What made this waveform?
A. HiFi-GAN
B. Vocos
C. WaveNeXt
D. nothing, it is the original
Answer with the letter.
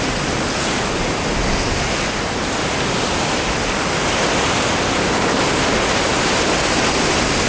D